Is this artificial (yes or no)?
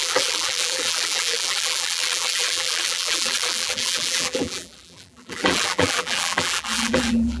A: yes